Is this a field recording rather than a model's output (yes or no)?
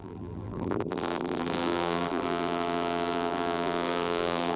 no